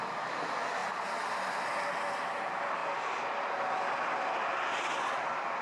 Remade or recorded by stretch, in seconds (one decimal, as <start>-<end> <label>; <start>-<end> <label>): 0.0-5.6 recorded